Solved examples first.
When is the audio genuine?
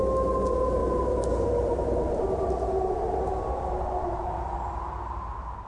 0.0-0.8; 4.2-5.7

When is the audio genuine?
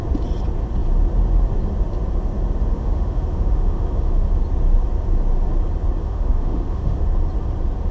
0.0-2.7; 4.3-6.0; 7.0-7.9